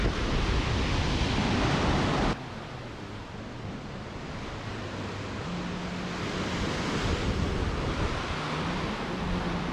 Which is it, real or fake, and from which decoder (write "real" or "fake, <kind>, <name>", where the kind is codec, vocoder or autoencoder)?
real